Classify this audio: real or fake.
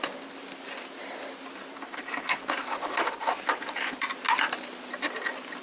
real